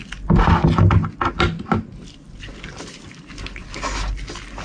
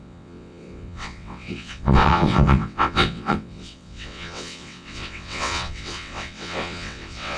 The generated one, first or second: second